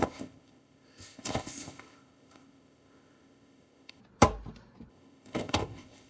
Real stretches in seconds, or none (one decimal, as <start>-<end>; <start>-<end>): 4.0-4.9